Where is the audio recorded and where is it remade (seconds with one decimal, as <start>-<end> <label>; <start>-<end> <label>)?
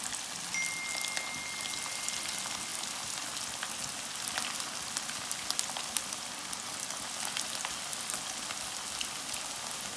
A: 0.0-10.0 recorded